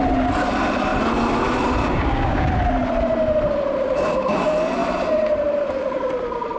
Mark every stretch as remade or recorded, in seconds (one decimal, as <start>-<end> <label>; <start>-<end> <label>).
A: 0.0-1.8 recorded; 1.8-2.5 remade; 2.5-6.6 recorded